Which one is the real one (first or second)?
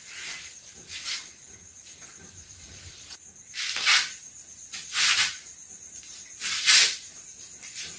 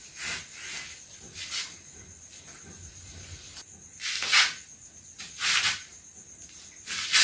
second